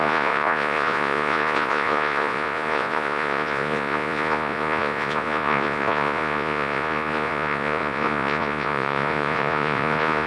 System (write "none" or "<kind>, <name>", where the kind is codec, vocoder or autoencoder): vocoder, Vocos